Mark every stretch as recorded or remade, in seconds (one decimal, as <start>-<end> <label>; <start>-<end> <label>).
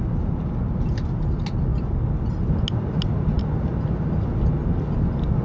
0.0-5.4 recorded